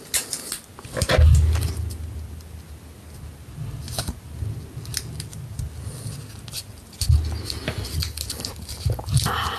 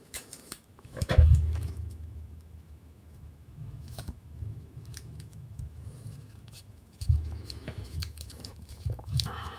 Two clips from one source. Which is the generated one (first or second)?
second